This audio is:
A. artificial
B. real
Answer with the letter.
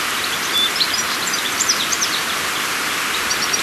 A